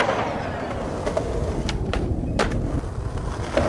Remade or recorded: recorded